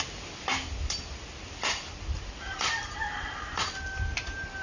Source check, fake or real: real